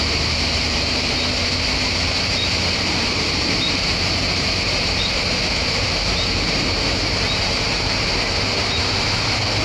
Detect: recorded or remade remade